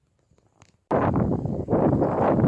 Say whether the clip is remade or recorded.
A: recorded